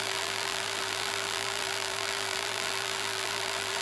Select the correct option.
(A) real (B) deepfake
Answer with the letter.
B